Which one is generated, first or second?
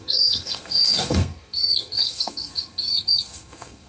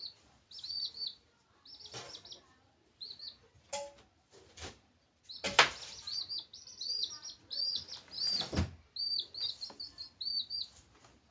first